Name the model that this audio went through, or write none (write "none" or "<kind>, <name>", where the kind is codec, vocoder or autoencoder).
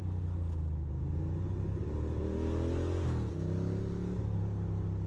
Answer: none